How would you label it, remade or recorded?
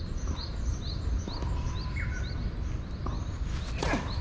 recorded